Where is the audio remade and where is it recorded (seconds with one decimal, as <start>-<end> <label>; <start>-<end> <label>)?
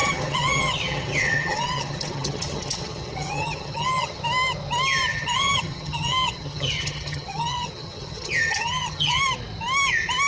0.0-4.2 remade; 4.2-5.1 recorded; 5.1-9.2 remade; 9.2-10.3 recorded